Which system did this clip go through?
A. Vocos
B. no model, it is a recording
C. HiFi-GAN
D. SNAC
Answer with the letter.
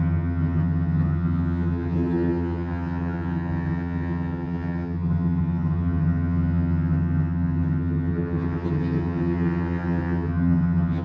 C